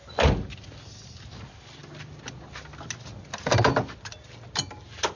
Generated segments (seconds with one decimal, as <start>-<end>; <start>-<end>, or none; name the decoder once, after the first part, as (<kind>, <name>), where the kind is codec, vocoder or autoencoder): none

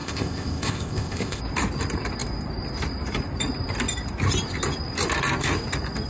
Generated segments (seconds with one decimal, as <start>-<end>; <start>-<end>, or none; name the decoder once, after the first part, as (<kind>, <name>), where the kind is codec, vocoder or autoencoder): 0.0-1.4 (codec, ZipCodec)

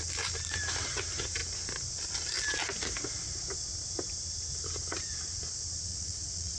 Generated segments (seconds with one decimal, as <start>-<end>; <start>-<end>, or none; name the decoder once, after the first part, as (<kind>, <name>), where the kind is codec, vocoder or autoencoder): 5.9-6.6 (vocoder, Vocos)

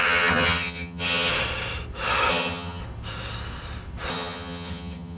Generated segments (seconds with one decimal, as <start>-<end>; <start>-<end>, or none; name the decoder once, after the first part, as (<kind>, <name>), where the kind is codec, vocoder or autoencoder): 0.0-1.3 (vocoder, HiFi-GAN); 2.3-2.8; 4.1-5.2

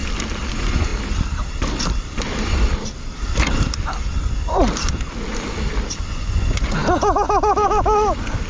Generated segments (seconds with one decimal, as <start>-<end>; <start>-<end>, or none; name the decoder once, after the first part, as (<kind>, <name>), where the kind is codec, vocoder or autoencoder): 0.5-0.9 (vocoder, Vocos); 6.0-6.8

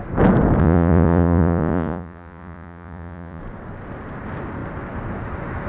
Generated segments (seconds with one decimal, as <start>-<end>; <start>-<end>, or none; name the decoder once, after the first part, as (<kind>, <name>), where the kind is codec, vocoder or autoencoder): 0.6-3.4 (vocoder, Vocos)

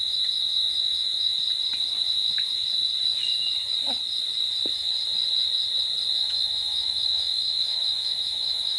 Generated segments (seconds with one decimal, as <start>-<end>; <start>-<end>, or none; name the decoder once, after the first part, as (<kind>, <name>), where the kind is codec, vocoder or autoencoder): 0.0-1.3 (autoencoder, DAC-VAE); 6.1-8.8

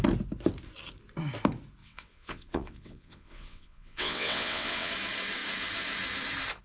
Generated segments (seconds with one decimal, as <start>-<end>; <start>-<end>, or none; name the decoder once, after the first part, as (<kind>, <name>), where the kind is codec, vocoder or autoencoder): 1.8-4.9 (vocoder, WaveNeXt)